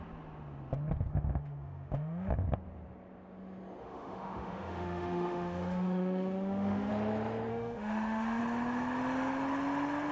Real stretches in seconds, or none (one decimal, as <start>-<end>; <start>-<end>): 0.0-1.1; 2.3-3.8; 6.9-7.5; 8.4-10.1